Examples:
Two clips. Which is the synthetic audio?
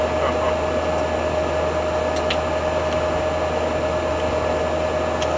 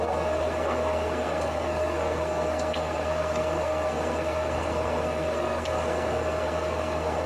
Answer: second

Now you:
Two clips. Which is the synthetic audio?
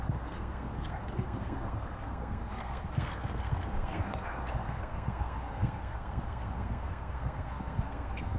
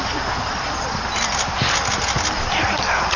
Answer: first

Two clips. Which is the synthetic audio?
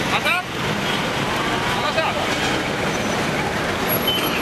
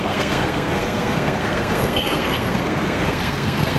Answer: second